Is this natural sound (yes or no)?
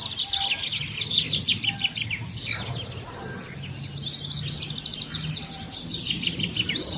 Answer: yes